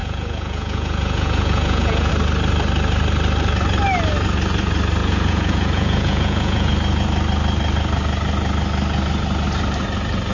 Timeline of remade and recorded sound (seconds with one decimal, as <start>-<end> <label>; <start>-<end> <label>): 0.0-2.1 remade; 2.1-5.0 recorded; 5.0-6.7 remade; 6.7-10.3 recorded